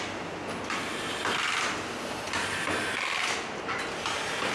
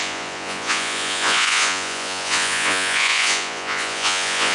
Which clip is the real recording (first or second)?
first